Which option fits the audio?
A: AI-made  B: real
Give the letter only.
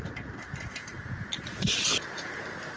B